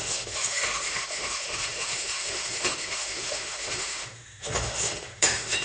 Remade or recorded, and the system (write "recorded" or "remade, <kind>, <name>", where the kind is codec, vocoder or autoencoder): remade, autoencoder, DAC-VAE